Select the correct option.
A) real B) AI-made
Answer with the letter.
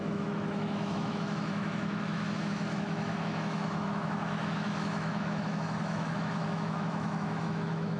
B